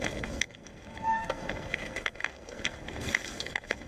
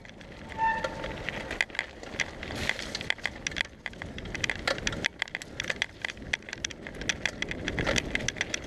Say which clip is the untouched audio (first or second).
second